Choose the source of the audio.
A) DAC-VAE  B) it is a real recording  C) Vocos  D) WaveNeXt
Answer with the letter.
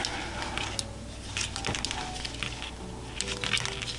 B